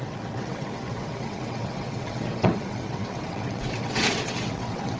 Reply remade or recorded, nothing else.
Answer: remade